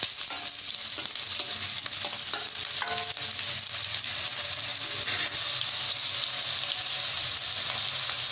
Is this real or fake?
real